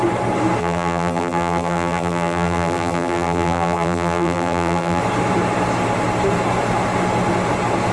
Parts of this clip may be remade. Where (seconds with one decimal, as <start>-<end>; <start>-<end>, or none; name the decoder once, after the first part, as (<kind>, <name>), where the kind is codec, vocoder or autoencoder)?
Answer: 0.6-5.0 (vocoder, BigVGAN v2)